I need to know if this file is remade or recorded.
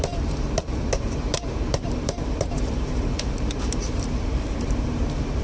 remade